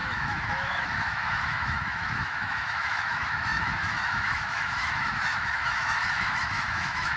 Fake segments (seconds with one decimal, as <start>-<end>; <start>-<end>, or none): 0.0-7.2